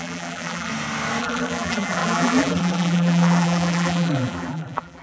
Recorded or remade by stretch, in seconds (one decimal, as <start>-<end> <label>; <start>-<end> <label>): 0.0-0.7 remade; 0.7-1.2 recorded; 1.2-5.0 remade